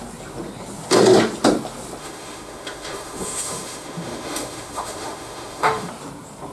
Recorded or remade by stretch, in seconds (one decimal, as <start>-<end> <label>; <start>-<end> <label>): 0.0-2.0 recorded; 2.0-5.9 remade; 5.9-6.5 recorded